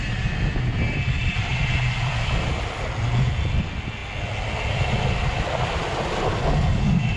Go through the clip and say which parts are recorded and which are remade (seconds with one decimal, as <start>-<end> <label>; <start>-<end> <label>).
0.0-7.2 recorded